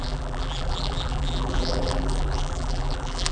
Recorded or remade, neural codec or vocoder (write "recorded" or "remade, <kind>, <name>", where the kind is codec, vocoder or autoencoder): remade, vocoder, BigVGAN v2